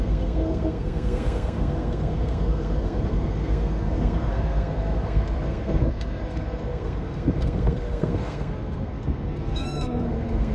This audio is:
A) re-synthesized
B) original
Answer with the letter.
A